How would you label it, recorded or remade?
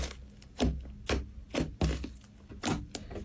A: recorded